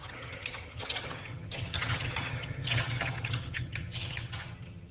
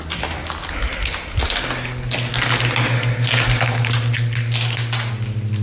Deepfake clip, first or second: first